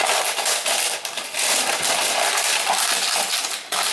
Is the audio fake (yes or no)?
no